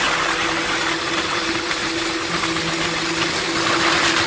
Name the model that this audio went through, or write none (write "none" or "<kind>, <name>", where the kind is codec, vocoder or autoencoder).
none